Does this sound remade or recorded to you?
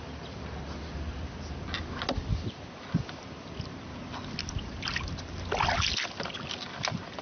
recorded